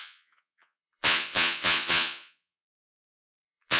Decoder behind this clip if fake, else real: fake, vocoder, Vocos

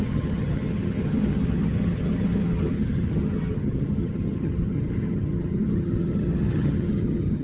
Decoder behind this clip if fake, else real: fake, vocoder, HiFi-GAN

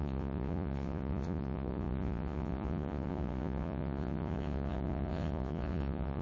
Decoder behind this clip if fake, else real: fake, vocoder, Vocos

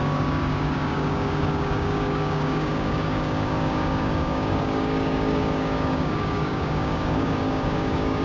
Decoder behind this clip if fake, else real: fake, codec, DAC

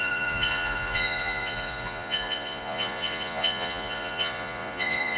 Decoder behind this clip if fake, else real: fake, vocoder, Vocos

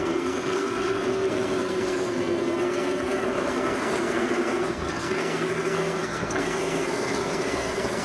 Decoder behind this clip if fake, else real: fake, codec, SNAC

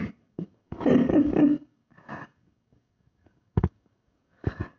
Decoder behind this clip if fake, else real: fake, codec, DAC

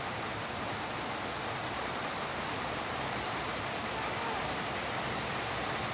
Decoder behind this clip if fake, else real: fake, vocoder, BigVGAN v2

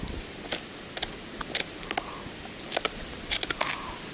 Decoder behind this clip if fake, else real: real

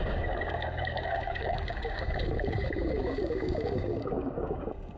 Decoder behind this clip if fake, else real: fake, codec, DAC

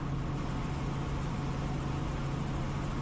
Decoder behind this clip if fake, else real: real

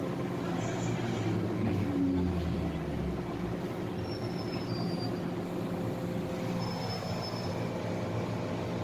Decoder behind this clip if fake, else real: real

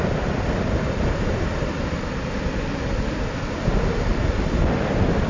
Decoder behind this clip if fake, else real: real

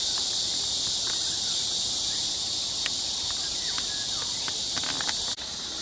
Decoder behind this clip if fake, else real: real